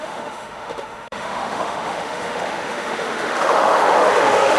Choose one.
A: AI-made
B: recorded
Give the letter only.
A